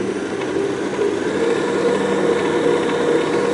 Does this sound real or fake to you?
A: real